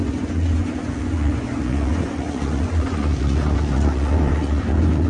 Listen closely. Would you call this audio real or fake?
fake